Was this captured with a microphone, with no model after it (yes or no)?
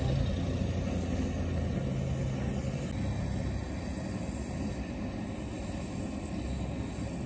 yes